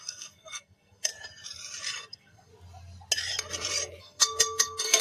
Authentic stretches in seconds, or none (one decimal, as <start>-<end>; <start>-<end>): 1.1-2.1; 2.5-4.0